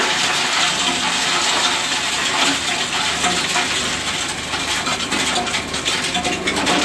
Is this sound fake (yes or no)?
no